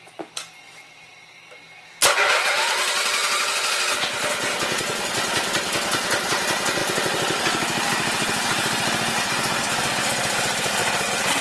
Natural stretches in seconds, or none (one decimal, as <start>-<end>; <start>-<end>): 0.0-11.4